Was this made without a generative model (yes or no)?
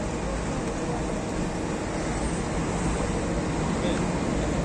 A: yes